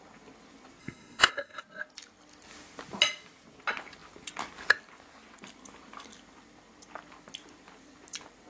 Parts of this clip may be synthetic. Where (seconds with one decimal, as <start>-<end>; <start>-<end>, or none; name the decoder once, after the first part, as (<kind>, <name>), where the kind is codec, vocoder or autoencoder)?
0.8-1.6 (codec, SNAC)

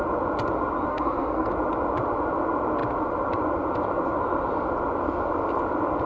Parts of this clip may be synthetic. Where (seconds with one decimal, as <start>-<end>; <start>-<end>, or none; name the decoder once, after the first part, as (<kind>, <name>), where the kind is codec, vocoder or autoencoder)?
0.9-1.5 (codec, SNAC)

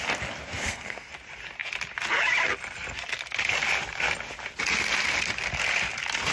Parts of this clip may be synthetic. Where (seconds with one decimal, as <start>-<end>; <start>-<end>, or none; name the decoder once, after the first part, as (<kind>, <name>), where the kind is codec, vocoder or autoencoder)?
0.6-1.1 (codec, SNAC)

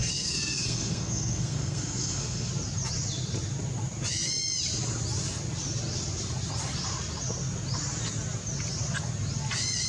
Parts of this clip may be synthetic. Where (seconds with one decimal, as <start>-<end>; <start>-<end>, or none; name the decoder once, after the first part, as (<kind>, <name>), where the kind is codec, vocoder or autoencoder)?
0.0-2.5 (codec, SNAC)

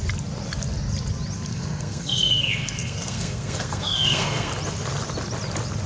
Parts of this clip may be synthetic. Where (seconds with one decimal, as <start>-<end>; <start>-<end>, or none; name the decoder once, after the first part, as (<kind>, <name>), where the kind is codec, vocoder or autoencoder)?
1.5-4.5 (codec, SNAC)

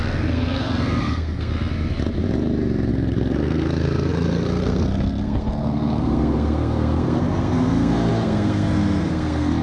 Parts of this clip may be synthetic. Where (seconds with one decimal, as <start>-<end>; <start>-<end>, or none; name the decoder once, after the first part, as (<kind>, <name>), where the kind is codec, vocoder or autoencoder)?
0.0-1.5 (codec, SNAC); 2.9-9.6

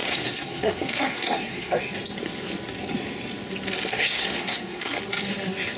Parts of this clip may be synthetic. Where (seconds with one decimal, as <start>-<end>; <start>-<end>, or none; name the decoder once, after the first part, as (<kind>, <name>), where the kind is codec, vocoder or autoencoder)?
0.0-1.8 (codec, SNAC); 3.9-5.0